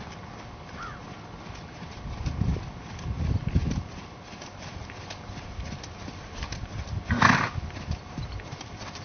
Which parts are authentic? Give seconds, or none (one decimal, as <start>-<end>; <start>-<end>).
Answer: 0.0-9.0